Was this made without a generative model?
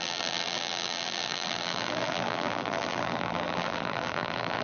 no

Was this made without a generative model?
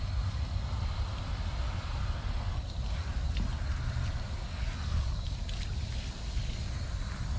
yes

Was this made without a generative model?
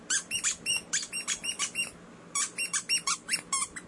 yes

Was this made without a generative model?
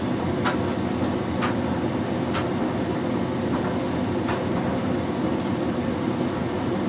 yes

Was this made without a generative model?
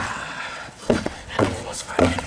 no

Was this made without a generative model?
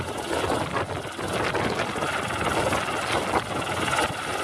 yes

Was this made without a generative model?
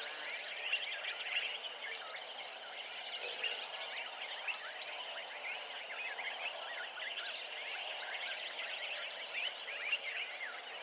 yes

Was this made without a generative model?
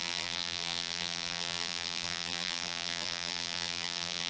no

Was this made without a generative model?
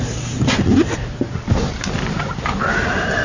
yes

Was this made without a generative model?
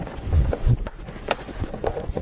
no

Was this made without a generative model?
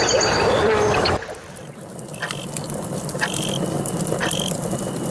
yes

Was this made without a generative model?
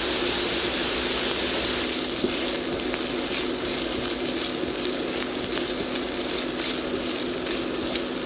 yes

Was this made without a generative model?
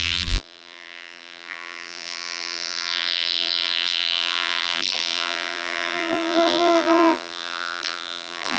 no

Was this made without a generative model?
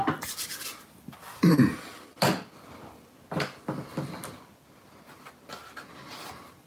yes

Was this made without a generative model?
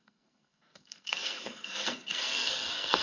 no